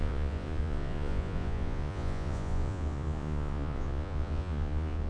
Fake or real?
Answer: fake